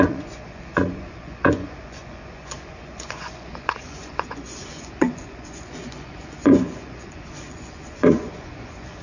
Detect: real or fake fake